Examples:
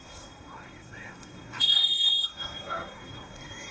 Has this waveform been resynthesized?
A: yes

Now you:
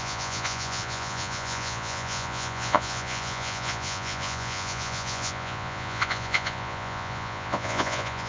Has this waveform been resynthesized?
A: yes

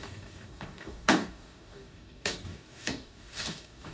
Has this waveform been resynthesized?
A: yes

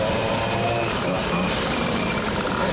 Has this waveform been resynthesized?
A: yes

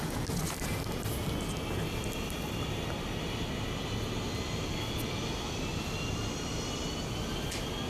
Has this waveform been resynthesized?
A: no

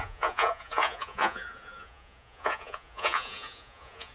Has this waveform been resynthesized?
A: yes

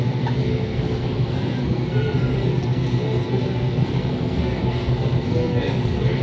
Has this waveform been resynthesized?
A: yes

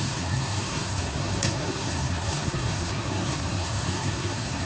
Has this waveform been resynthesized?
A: yes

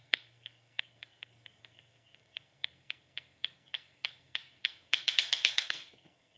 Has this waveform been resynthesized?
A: yes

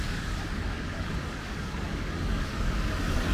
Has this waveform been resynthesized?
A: yes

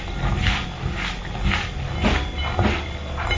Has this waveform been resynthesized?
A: no